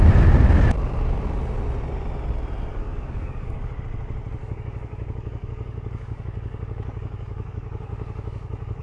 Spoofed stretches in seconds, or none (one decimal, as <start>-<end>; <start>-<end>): 2.7-3.8; 4.4-8.8